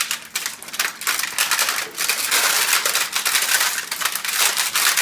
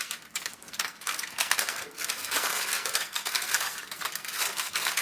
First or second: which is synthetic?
second